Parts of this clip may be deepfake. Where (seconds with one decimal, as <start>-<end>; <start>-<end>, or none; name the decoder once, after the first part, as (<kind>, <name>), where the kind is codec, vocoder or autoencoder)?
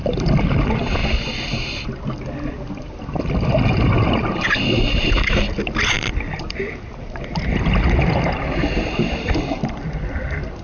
0.0-1.0 (vocoder, BigVGAN v2); 5.5-10.6